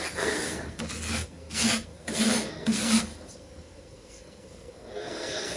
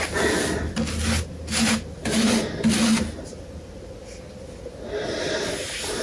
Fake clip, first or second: first